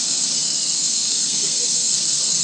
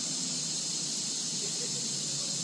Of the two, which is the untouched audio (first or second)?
second